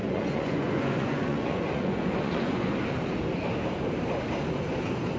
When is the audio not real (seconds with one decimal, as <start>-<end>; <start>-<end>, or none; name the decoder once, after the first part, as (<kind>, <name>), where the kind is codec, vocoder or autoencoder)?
0.0-2.7 (vocoder, Vocos)